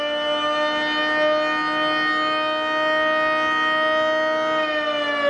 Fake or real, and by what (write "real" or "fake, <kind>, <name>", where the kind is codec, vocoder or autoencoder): real